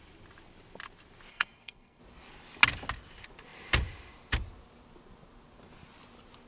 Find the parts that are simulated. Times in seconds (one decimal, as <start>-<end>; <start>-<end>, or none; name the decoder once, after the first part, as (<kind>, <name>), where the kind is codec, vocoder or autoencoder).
1.3-2.0 (codec, SNAC)